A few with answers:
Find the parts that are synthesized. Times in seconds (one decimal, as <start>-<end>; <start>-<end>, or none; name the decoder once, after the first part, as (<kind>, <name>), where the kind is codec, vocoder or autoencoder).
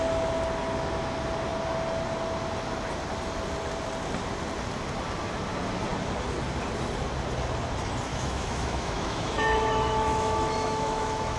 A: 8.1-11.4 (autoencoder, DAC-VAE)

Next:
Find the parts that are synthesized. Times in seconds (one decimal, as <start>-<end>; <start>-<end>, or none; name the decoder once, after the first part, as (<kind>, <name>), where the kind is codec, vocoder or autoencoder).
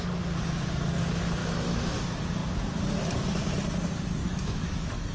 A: 1.4-2.0 (autoencoder, DAC-VAE); 4.2-5.1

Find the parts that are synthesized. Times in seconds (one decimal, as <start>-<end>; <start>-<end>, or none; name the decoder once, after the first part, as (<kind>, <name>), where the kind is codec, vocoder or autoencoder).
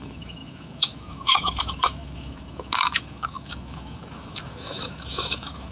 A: 0.0-5.7 (autoencoder, DAC-VAE)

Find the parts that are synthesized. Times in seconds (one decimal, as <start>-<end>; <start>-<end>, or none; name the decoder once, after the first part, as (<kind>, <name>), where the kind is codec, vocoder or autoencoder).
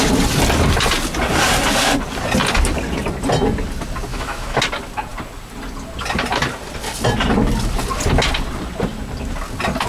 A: 4.1-4.6 (autoencoder, DAC-VAE)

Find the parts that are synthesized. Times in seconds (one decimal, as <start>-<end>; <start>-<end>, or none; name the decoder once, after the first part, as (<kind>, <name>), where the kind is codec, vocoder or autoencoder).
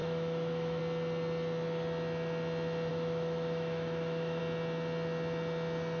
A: 0.0-0.8 (autoencoder, DAC-VAE); 2.9-4.4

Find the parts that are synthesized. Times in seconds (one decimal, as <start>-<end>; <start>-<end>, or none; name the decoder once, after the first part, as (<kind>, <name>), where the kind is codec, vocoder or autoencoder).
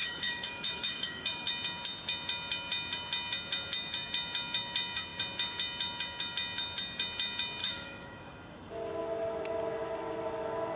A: 0.0-1.5 (autoencoder, DAC-VAE); 7.6-8.7